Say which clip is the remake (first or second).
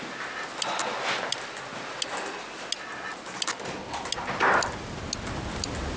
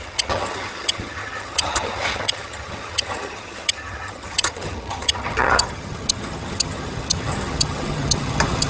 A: second